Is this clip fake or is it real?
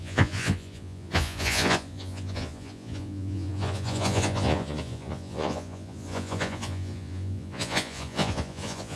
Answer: fake